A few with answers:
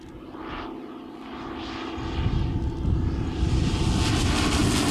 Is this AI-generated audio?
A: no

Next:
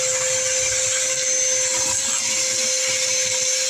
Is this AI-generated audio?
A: no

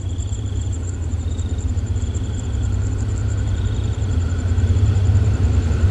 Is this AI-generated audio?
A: yes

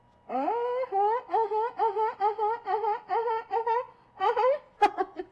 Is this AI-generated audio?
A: no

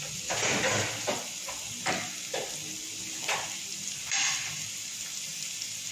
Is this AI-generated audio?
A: no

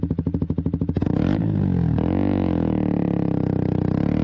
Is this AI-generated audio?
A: no